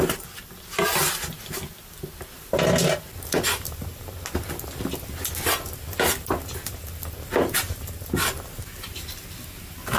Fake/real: real